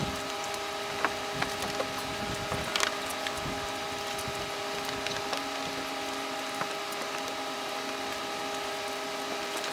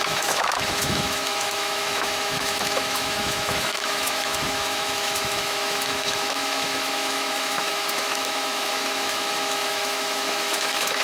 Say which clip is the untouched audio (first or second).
first